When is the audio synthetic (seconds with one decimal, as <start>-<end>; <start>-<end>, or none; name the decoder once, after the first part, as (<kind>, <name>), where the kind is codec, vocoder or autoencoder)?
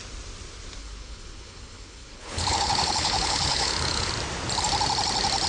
0.8-4.1 (codec, HILCodec)